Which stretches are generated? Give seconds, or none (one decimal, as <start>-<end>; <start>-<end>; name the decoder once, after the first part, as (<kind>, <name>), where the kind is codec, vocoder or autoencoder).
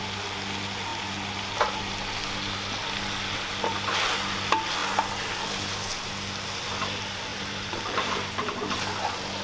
7.3-8.5 (vocoder, BigVGAN v2)